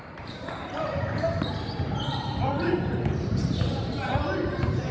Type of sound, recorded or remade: remade